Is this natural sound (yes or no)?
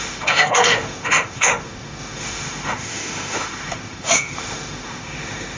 no